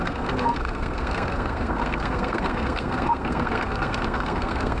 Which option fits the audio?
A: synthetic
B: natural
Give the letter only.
A